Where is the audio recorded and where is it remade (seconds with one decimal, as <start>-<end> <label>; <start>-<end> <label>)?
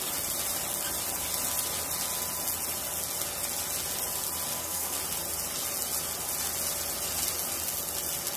0.0-4.5 recorded; 4.5-5.0 remade; 5.0-8.4 recorded